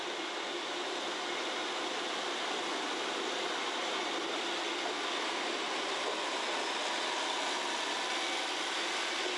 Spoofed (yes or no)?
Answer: no